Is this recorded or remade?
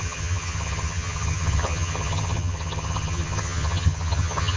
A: remade